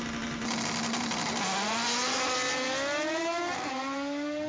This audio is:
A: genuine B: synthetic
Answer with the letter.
A